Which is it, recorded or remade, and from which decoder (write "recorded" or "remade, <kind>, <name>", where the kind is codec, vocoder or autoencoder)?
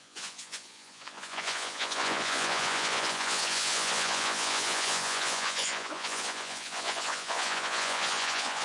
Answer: remade, vocoder, Vocos